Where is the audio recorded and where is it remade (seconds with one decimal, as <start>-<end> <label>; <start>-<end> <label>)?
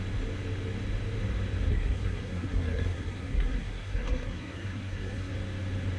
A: 0.0-1.7 recorded; 1.7-5.3 remade; 5.3-6.0 recorded